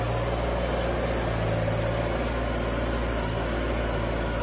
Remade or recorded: recorded